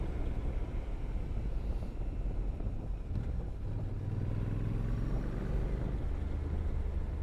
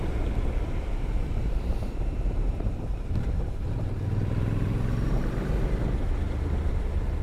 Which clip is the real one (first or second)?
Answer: first